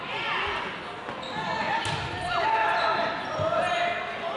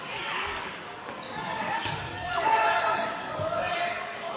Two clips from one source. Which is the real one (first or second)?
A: first